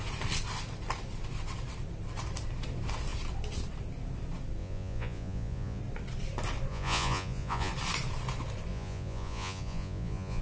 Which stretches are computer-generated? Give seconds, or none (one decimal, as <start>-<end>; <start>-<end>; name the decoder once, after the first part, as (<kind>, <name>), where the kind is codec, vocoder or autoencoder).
4.6-5.8 (vocoder, Vocos); 6.7-7.7; 8.7-10.4

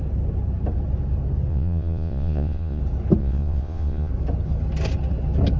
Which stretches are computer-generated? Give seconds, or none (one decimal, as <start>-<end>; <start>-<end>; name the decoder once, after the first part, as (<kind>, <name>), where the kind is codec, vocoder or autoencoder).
1.5-2.8 (vocoder, Vocos); 3.2-4.1

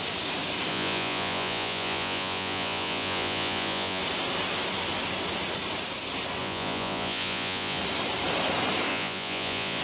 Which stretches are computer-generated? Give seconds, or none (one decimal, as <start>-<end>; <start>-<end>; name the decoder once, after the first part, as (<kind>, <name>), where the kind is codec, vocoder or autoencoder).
0.7-4.0 (vocoder, Vocos); 6.4-7.8; 8.9-9.8

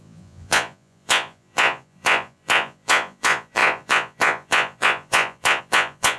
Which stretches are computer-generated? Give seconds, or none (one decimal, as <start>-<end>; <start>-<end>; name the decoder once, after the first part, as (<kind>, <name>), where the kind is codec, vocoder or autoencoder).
0.0-6.2 (vocoder, Vocos)

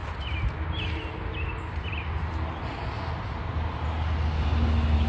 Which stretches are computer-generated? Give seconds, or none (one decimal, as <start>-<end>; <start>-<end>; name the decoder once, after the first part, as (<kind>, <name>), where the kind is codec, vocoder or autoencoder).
none